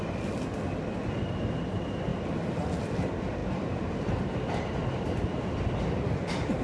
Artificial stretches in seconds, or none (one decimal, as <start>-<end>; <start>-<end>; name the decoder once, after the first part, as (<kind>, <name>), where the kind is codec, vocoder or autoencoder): 3.4-5.6 (vocoder, BigVGAN v2)